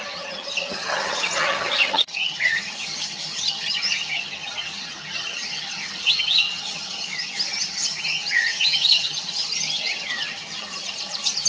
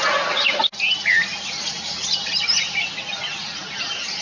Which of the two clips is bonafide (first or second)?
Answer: second